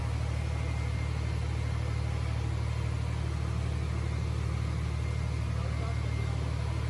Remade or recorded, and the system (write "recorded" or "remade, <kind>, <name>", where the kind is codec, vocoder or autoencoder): recorded